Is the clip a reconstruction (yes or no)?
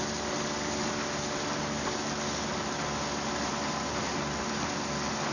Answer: no